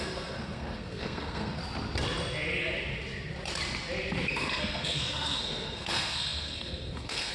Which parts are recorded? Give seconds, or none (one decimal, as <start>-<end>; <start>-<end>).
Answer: 1.6-4.3